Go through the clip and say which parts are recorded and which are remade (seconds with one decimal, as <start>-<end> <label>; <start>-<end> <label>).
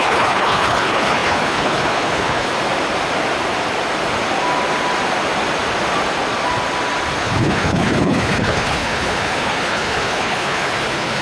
0.0-2.5 remade; 2.5-7.2 recorded; 7.2-11.2 remade